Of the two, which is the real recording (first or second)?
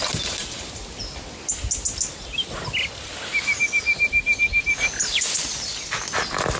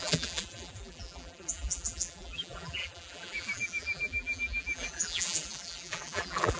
first